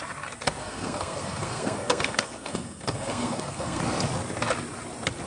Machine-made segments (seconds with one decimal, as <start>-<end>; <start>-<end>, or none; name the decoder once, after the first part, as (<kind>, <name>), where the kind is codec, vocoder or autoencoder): 0.6-3.8 (codec, SNAC)

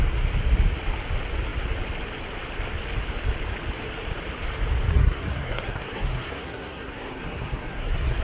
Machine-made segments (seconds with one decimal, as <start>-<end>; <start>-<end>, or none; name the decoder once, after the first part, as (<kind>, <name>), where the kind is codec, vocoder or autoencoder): 4.9-8.2 (codec, SNAC)

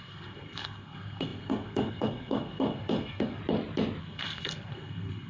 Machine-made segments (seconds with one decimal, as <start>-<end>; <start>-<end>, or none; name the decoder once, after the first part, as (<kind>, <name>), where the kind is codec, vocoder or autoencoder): 0.0-3.4 (codec, SNAC); 4.0-5.3

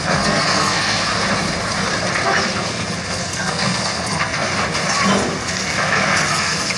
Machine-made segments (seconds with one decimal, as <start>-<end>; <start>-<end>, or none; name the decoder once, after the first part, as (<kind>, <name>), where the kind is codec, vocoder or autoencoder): 0.0-1.1 (codec, SNAC); 2.7-4.5; 5.4-6.8

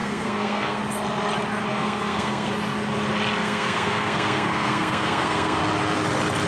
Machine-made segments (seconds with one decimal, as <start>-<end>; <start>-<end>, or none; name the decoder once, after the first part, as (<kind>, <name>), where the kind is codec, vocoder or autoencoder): 0.0-0.8 (codec, SNAC); 1.7-2.5; 3.4-5.6